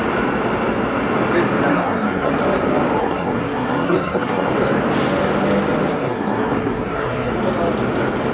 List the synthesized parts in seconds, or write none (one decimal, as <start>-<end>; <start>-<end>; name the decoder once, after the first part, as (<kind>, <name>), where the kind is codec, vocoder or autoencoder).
1.7-2.3 (codec, SNAC); 3.0-4.5; 5.9-7.3